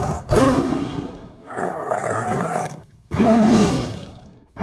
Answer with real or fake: fake